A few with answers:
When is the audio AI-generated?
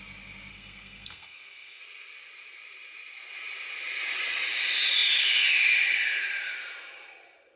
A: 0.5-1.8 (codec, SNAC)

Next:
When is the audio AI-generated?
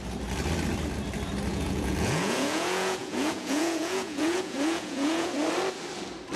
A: 1.5-5.3 (vocoder, Vocos)